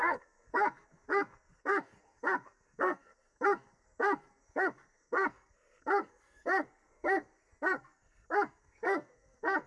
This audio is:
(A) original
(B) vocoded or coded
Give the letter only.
B